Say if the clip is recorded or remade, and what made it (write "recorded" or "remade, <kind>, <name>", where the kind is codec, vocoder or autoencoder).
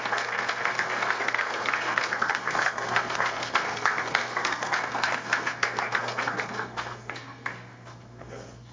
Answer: remade, codec, SNAC